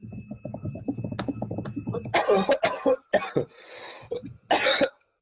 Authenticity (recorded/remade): recorded